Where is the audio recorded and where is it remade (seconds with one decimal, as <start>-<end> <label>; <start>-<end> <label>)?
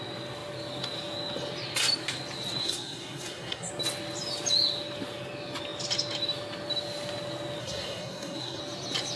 0.0-2.6 recorded; 2.6-3.7 remade; 3.7-7.6 recorded; 7.6-8.6 remade; 8.6-9.2 recorded